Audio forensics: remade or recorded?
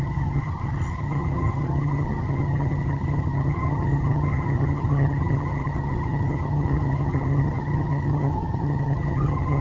remade